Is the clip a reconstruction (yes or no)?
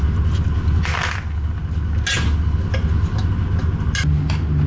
no